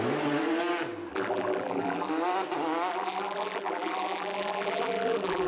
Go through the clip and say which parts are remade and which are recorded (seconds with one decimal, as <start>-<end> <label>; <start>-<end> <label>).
0.0-1.1 recorded; 1.1-2.1 remade; 2.1-2.9 recorded; 2.9-5.5 remade